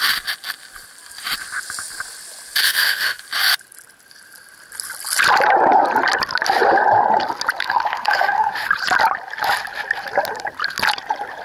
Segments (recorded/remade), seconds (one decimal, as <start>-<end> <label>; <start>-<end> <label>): 0.0-2.6 recorded; 2.6-3.2 remade; 3.2-7.6 recorded; 7.6-8.5 remade; 8.5-11.4 recorded